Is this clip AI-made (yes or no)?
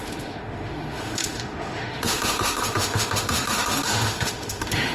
yes